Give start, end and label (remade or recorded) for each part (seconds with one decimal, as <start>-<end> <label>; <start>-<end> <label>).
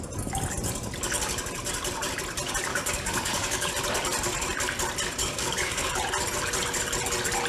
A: 0.0-2.7 recorded; 2.7-3.7 remade; 3.7-5.2 recorded; 5.2-5.9 remade; 5.9-7.5 recorded